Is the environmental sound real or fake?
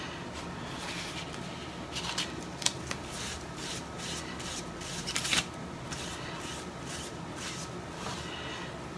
real